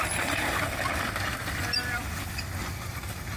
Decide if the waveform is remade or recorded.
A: recorded